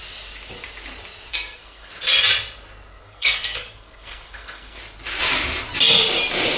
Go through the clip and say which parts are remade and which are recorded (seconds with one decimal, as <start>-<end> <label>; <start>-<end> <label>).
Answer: 0.0-1.3 recorded; 1.3-1.9 remade; 1.9-2.9 recorded; 2.9-4.8 remade; 4.8-6.6 recorded